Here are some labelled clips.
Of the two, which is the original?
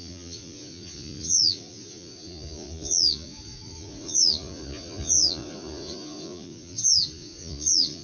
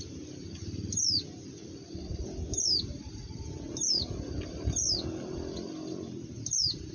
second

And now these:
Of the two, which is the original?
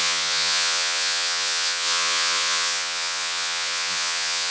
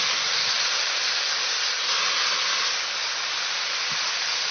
second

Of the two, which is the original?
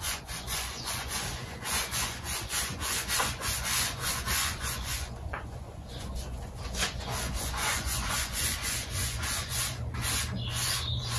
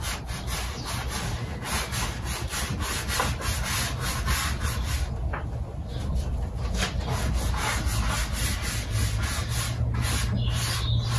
second